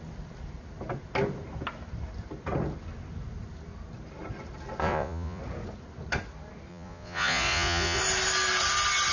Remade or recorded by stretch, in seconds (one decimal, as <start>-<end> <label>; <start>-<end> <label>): 0.0-4.8 recorded; 4.8-5.4 remade; 5.4-6.7 recorded; 6.7-8.0 remade; 8.0-9.1 recorded